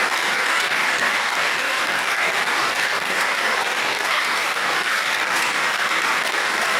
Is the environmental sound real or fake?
fake